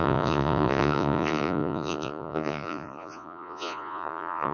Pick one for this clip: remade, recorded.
remade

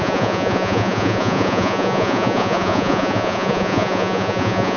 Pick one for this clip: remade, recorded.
remade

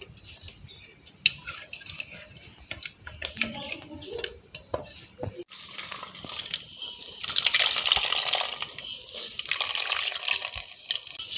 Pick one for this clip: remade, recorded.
recorded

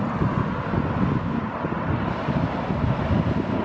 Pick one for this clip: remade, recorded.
recorded